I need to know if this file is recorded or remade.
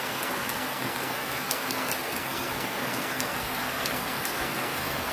remade